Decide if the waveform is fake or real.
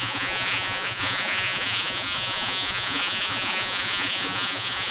fake